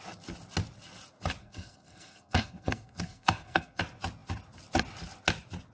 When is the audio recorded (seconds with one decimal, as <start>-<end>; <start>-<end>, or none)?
0.0-1.4; 3.8-5.7